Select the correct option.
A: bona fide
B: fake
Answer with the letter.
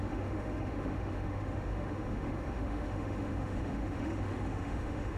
B